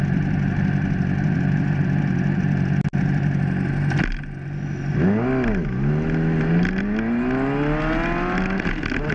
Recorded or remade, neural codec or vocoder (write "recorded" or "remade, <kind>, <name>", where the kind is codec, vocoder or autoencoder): recorded